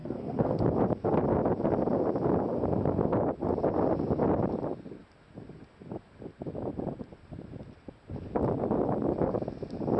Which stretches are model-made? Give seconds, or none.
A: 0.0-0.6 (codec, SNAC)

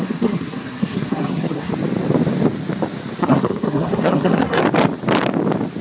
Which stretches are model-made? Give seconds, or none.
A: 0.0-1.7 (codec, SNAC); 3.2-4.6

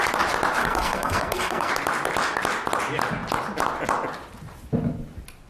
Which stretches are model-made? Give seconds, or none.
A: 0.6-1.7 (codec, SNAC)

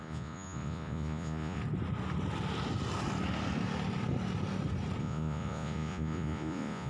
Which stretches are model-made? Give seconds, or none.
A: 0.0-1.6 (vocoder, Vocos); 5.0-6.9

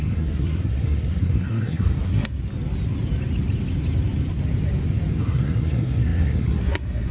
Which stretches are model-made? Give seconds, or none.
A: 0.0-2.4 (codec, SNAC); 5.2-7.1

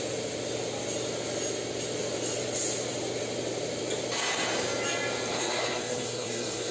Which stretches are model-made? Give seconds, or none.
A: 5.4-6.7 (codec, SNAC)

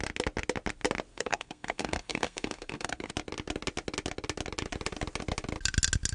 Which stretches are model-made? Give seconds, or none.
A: 1.1-3.1 (codec, SNAC)

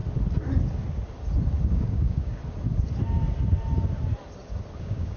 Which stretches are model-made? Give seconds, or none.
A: 1.7-2.4 (codec, DAC); 4.8-5.2